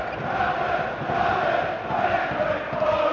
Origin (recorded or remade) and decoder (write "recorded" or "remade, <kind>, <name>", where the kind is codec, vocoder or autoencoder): recorded